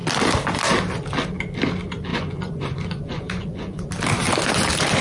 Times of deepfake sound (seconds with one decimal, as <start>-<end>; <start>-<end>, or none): 2.1-3.9